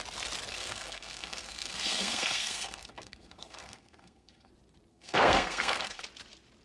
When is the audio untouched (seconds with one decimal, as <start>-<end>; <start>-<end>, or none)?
0.0-0.5; 4.5-4.9; 6.0-6.6